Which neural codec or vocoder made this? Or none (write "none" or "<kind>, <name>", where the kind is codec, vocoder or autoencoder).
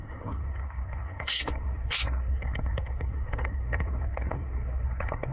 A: codec, SNAC